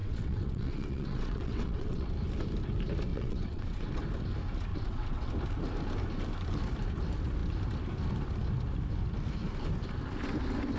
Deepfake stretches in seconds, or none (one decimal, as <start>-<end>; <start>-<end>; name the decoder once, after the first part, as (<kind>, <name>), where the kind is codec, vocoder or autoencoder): 0.0-2.1 (vocoder, WaveNeXt); 3.1-4.0; 4.7-5.3